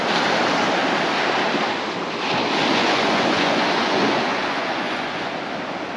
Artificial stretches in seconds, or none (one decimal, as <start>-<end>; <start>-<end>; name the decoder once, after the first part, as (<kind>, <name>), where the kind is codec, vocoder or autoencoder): 2.7-5.3 (vocoder, Vocos)